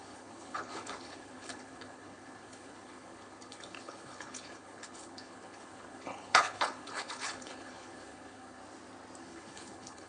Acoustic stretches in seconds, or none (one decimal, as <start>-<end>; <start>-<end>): 8.6-9.2